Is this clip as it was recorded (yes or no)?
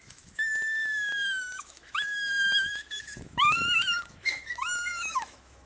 no